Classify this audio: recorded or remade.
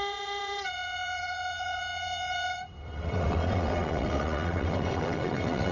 remade